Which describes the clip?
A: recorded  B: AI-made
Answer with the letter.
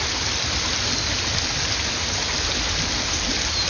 A